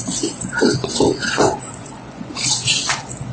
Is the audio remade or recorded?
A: remade